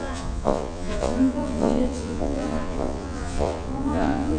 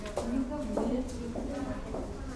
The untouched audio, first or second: second